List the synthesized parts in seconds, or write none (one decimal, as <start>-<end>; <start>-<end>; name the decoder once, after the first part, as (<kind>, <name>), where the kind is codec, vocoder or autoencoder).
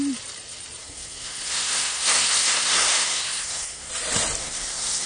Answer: 0.8-3.9 (codec, SNAC); 4.4-5.1